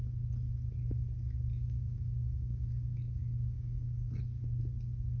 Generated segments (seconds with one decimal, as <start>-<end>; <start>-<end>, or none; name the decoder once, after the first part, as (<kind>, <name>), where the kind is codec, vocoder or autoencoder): 1.5-4.2 (codec, DAC)